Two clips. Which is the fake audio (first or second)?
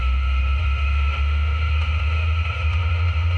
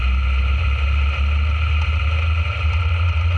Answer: first